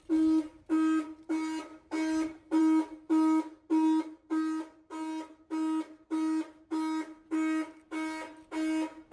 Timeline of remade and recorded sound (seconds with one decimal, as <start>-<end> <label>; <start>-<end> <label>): 0.0-9.1 recorded